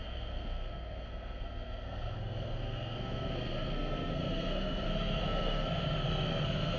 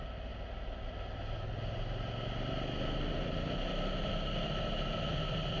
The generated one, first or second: first